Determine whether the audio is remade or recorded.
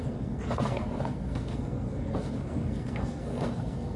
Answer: remade